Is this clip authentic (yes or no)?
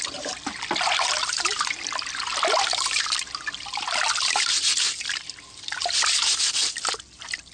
yes